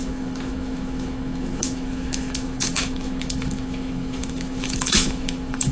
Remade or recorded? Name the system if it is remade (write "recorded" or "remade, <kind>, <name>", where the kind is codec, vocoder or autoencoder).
remade, autoencoder, DAC-VAE